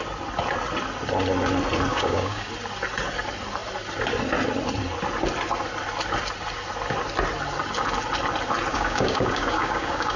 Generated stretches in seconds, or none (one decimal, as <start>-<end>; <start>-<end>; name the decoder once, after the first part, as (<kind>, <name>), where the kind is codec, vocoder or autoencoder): 1.9-2.5 (codec, DAC); 8.7-10.2